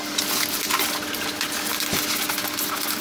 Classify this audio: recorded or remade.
recorded